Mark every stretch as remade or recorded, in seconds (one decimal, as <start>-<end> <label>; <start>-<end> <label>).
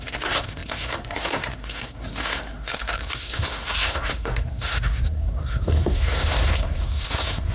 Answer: 0.0-7.5 remade